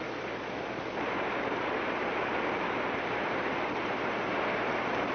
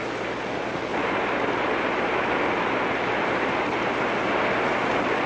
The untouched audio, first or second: second